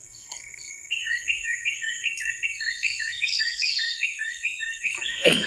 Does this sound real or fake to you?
fake